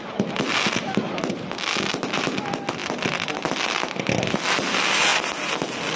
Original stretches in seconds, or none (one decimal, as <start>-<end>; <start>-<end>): 0.0-6.0